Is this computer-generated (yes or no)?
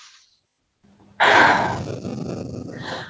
no